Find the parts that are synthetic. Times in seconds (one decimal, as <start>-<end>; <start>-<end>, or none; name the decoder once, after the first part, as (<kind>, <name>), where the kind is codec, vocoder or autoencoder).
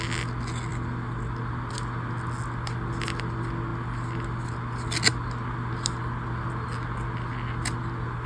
none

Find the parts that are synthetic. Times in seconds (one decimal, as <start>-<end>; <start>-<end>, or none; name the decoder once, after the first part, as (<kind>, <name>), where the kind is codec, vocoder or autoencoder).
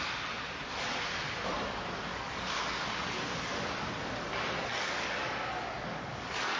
2.1-3.6 (codec, DAC); 4.7-6.6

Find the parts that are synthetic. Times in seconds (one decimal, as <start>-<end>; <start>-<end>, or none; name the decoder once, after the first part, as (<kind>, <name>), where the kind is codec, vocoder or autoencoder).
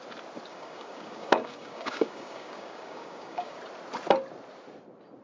0.5-3.6 (codec, DAC)